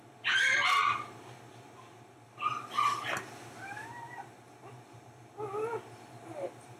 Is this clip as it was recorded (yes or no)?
yes